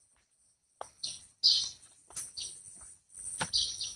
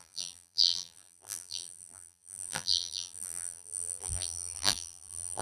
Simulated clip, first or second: second